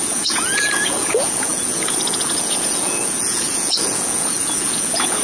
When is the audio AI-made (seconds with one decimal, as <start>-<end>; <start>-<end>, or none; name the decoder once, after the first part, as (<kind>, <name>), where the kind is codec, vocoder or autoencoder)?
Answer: 0.0-5.2 (vocoder, Vocos)